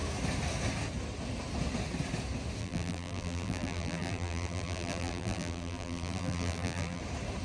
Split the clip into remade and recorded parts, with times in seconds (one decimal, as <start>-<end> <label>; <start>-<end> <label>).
0.0-2.6 recorded; 2.6-7.0 remade; 7.0-7.4 recorded